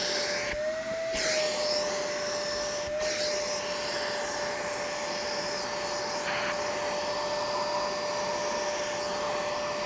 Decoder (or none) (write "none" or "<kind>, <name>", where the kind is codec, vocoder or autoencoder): none